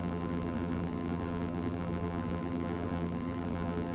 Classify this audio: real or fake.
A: fake